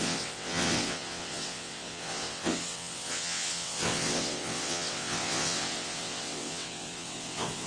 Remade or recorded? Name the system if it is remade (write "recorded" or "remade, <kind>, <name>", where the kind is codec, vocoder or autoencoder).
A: remade, vocoder, WaveNeXt